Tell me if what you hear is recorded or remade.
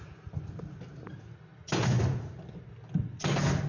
recorded